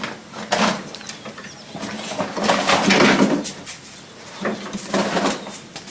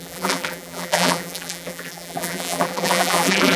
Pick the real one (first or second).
first